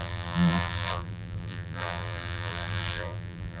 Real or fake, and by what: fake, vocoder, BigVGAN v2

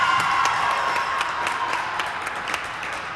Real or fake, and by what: real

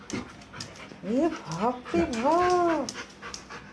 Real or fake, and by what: real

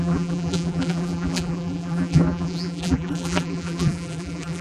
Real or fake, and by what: fake, vocoder, BigVGAN v2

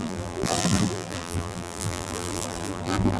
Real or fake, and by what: fake, vocoder, BigVGAN v2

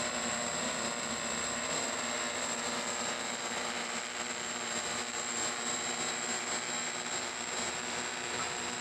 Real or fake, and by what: real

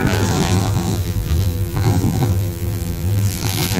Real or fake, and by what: fake, vocoder, BigVGAN v2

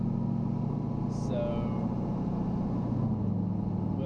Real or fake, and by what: real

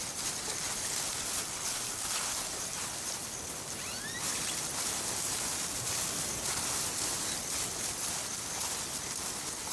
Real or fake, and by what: real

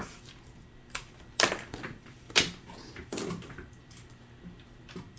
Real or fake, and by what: fake, vocoder, BigVGAN v2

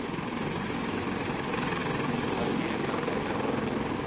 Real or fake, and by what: real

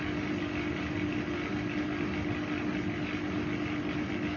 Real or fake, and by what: real